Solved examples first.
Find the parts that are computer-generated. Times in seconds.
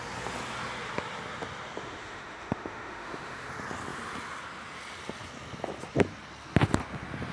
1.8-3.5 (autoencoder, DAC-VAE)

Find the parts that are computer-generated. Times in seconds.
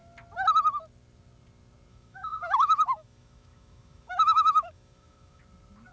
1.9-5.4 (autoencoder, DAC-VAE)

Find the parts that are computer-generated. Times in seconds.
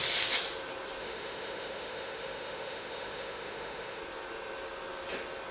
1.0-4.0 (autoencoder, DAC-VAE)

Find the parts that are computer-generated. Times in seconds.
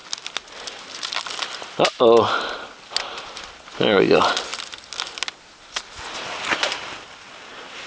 none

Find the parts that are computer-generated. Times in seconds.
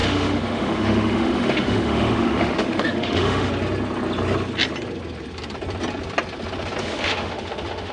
0.0-3.5 (autoencoder, DAC-VAE); 6.8-7.9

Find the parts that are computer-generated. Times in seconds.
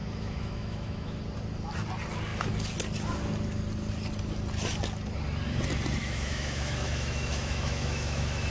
0.0-1.2 (autoencoder, DAC-VAE); 6.0-8.5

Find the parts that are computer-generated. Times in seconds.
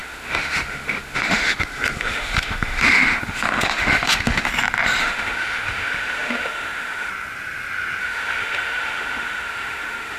0.0-4.5 (autoencoder, DAC-VAE); 5.0-7.1; 8.0-10.2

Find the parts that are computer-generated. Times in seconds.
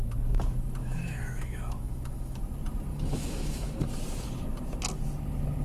0.8-2.4 (autoencoder, DAC-VAE); 2.9-3.9